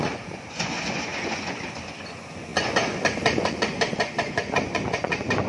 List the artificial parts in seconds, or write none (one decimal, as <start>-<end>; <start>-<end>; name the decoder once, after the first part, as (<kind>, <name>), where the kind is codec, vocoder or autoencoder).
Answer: 0.0-5.5 (vocoder, Vocos)